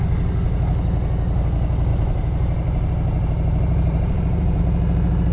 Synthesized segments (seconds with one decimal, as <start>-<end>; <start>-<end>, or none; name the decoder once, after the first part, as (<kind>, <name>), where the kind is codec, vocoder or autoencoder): 1.9-4.6 (vocoder, BigVGAN v2)